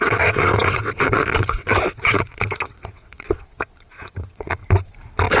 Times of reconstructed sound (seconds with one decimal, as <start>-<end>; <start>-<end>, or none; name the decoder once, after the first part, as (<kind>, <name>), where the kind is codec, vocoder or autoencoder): 0.0-4.6 (vocoder, WaveNeXt)